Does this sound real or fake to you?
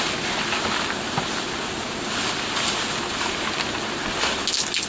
real